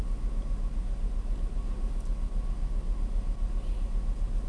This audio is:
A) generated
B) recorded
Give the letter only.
B